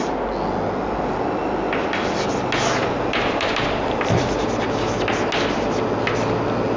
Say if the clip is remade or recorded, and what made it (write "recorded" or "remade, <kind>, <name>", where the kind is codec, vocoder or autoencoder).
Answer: recorded